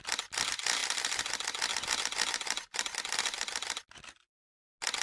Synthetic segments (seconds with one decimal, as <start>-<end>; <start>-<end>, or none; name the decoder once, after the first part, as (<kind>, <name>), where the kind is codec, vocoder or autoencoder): none